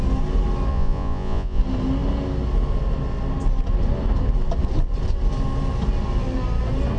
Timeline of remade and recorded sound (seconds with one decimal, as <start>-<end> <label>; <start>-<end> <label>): 0.0-0.7 recorded; 0.7-1.6 remade; 1.6-7.0 recorded